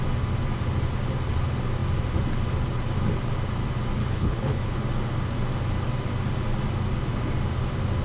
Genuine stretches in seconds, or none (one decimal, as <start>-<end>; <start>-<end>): 0.0-4.0; 4.8-8.0